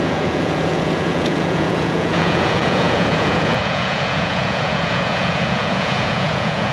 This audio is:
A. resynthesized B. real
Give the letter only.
A